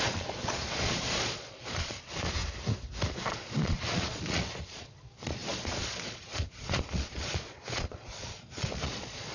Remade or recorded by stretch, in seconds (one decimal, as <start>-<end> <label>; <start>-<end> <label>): 0.0-2.4 remade; 2.4-3.1 recorded; 3.1-9.3 remade